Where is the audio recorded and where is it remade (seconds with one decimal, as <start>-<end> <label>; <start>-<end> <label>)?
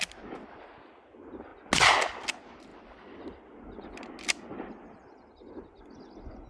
0.0-6.5 recorded